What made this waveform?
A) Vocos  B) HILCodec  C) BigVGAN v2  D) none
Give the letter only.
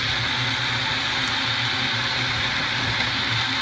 D